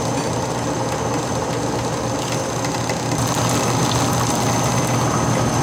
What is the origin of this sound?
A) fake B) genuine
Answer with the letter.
B